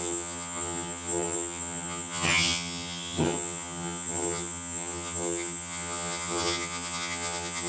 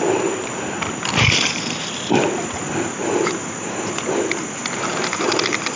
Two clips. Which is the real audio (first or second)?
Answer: second